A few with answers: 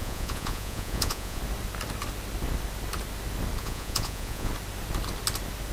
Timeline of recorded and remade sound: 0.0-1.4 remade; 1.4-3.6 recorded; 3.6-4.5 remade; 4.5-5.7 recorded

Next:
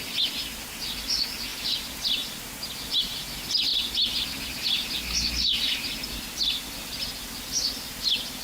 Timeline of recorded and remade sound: 0.0-8.4 recorded

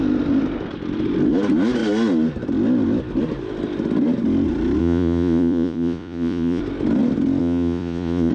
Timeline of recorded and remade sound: 0.0-4.8 recorded; 4.8-6.6 remade; 6.6-7.4 recorded; 7.4-8.3 remade

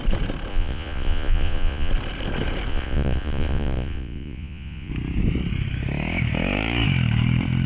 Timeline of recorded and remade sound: 0.0-0.5 recorded; 0.5-1.9 remade; 1.9-2.7 recorded; 2.7-4.9 remade; 4.9-7.7 recorded